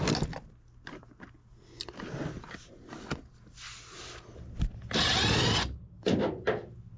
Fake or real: real